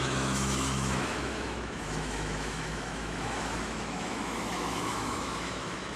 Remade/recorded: remade